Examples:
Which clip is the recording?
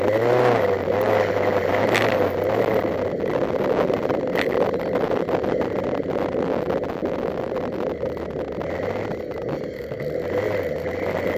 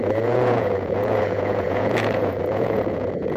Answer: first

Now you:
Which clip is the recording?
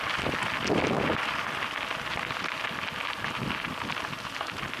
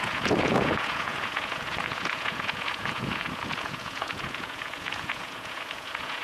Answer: first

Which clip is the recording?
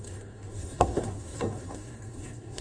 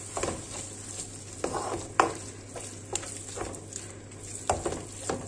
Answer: second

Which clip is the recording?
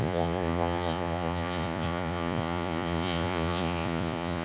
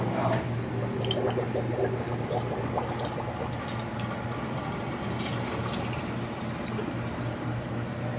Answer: second